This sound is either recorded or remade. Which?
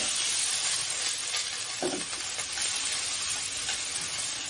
recorded